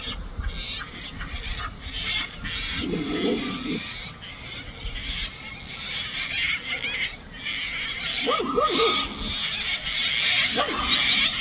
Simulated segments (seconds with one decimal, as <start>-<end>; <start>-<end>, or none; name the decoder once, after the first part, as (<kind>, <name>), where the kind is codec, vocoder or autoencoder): none